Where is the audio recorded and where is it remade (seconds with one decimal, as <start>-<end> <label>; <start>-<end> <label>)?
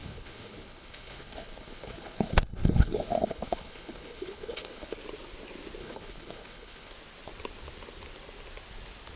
0.0-5.0 remade; 5.0-5.8 recorded; 5.8-6.9 remade; 6.9-9.2 recorded